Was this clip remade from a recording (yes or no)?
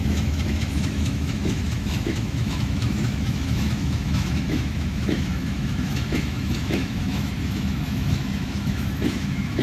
yes